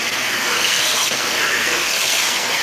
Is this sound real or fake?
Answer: fake